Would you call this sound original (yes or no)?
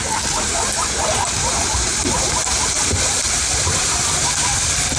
no